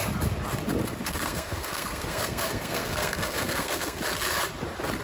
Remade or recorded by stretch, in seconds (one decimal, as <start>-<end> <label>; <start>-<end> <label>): 0.0-1.0 recorded; 1.0-4.0 remade; 4.0-5.0 recorded